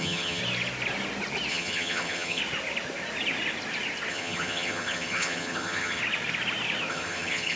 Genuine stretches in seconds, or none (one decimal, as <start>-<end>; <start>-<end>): 0.4-1.5; 2.4-4.1; 6.0-6.9